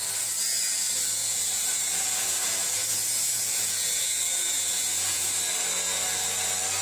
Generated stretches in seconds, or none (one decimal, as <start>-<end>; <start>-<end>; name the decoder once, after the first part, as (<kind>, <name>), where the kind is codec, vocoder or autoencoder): 1.2-5.3 (vocoder, Vocos)